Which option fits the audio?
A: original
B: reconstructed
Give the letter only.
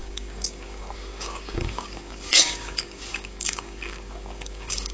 B